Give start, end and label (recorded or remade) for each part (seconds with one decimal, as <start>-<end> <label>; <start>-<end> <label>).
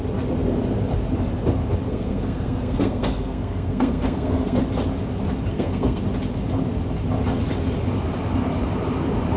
0.0-1.9 recorded; 1.9-4.6 remade; 4.6-5.5 recorded; 5.5-6.0 remade; 6.0-9.4 recorded